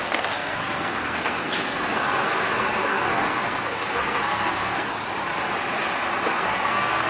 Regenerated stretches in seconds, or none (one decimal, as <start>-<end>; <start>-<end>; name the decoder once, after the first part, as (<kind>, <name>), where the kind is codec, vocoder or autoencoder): 0.0-4.9 (codec, SNAC); 6.3-7.1